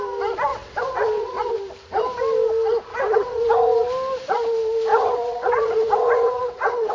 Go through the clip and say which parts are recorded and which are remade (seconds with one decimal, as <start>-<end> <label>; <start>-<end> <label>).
0.0-0.5 recorded; 0.5-1.5 remade; 1.5-2.9 recorded; 2.9-3.5 remade; 3.5-4.9 recorded; 4.9-6.9 remade